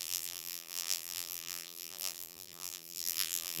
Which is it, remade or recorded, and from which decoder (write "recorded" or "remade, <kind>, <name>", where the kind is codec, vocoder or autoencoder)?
remade, vocoder, BigVGAN v2